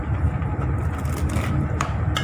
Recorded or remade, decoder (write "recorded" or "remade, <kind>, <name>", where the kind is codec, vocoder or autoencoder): recorded